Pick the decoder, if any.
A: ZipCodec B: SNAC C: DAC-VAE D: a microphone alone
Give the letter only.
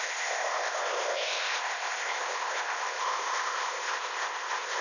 A